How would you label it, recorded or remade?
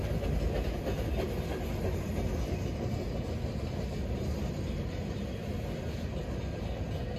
recorded